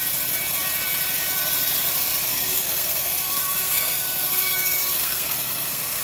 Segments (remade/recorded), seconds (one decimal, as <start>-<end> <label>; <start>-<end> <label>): 0.0-2.3 recorded; 2.3-6.0 remade